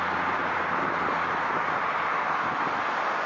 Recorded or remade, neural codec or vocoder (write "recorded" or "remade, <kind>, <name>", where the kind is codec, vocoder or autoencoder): recorded